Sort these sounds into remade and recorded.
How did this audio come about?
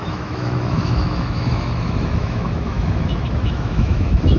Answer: remade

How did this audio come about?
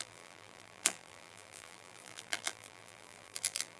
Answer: remade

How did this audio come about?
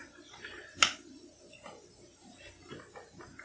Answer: recorded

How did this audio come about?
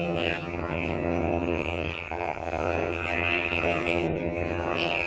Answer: remade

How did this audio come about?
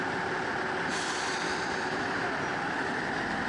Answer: recorded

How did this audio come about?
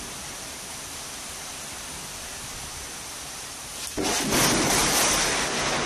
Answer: recorded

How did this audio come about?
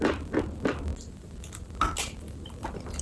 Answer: recorded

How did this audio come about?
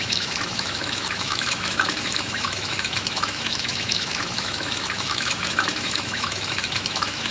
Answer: remade